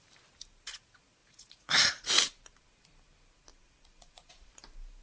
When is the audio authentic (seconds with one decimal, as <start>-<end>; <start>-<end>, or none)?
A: 0.0-1.2; 2.2-3.5; 4.5-5.0